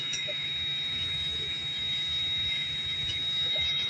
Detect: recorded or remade remade